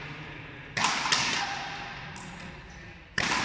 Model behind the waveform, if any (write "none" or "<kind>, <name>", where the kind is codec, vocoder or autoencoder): none